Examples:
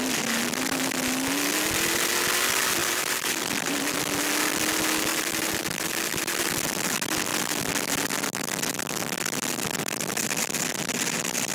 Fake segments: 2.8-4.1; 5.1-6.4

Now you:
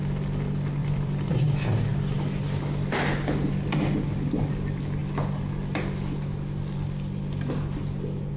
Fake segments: 0.8-1.3

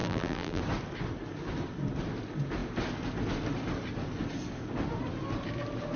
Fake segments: 0.0-0.6